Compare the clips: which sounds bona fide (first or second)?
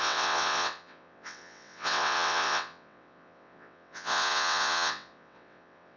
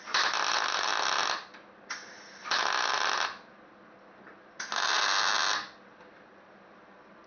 second